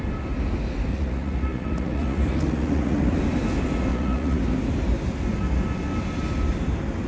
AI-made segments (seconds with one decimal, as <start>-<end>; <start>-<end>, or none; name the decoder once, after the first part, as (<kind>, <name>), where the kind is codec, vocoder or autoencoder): 0.9-3.2 (vocoder, Vocos); 3.9-4.4